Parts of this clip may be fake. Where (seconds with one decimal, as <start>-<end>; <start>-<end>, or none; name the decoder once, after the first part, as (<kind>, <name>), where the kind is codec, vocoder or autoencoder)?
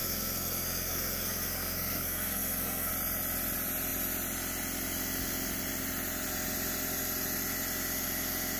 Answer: 0.0-2.9 (codec, SNAC)